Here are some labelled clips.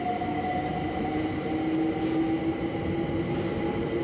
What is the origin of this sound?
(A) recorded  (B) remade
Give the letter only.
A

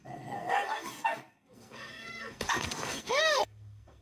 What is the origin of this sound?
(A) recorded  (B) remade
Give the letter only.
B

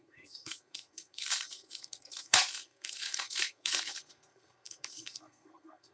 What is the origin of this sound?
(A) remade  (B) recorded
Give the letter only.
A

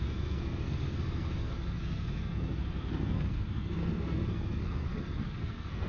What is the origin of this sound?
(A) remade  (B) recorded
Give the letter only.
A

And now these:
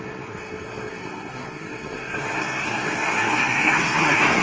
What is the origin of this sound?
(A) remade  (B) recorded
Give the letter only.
A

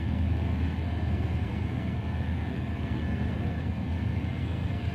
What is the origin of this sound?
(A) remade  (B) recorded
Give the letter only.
A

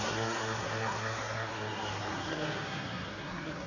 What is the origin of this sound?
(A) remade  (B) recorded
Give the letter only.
A